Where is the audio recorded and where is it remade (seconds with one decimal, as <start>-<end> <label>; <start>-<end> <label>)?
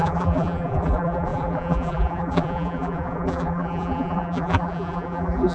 0.0-5.5 remade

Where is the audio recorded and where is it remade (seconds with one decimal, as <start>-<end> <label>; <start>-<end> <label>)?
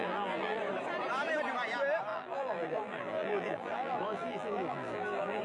0.0-0.6 remade; 0.6-2.1 recorded; 2.1-5.4 remade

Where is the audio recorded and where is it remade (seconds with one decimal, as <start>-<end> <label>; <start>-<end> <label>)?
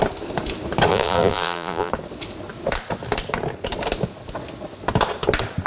0.0-0.9 recorded; 0.9-1.9 remade; 1.9-5.7 recorded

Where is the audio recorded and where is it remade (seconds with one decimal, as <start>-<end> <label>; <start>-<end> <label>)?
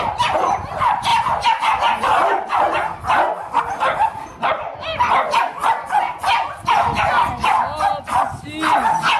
0.0-1.1 remade; 1.1-3.6 recorded; 3.6-4.9 remade; 4.9-9.2 recorded